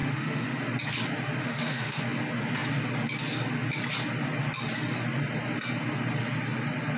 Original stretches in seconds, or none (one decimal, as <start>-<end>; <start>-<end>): 0.6-1.4; 2.0-7.0